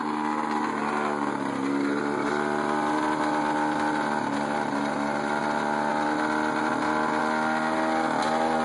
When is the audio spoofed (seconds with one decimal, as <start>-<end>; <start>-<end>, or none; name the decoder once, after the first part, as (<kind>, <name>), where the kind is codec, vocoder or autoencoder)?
none